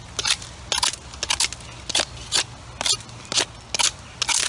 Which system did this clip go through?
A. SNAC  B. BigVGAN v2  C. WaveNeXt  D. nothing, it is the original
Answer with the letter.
D